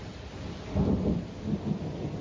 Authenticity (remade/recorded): recorded